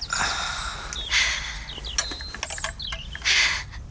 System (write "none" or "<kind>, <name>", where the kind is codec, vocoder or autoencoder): none